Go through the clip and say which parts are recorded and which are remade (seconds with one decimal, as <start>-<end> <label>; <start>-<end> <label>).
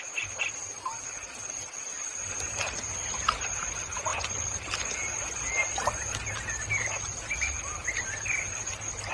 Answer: 0.0-9.1 recorded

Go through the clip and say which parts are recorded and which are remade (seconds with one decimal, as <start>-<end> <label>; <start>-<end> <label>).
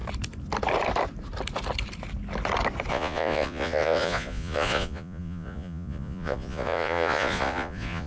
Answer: 0.0-2.9 recorded; 2.9-8.1 remade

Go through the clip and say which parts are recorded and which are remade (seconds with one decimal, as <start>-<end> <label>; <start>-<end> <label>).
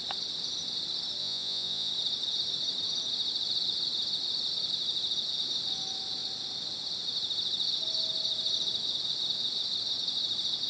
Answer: 0.0-1.2 recorded; 1.2-1.9 remade; 1.9-10.7 recorded